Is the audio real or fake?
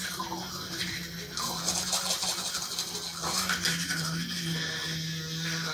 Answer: real